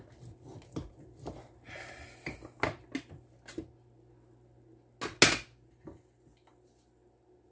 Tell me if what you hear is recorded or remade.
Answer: recorded